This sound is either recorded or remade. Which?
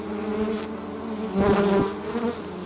recorded